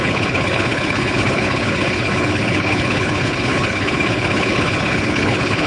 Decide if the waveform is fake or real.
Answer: fake